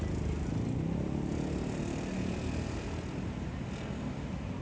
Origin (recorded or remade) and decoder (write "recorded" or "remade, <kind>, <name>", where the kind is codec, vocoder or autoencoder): recorded